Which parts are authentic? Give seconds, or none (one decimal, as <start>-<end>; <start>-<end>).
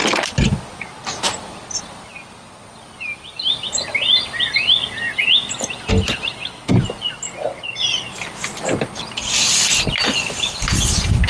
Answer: 0.0-11.3